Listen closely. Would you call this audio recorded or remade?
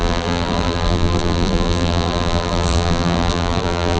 remade